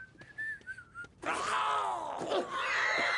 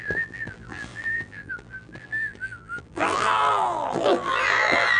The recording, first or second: first